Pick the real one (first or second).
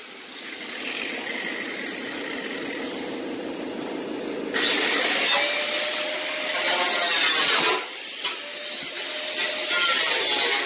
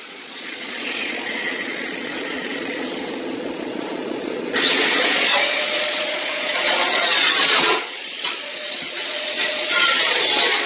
first